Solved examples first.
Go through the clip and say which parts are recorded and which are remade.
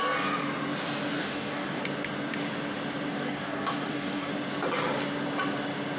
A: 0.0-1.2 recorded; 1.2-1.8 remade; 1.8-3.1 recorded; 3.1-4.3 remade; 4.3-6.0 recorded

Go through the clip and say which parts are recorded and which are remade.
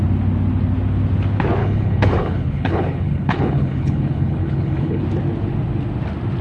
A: 0.0-1.6 recorded; 1.6-5.0 remade; 5.0-6.4 recorded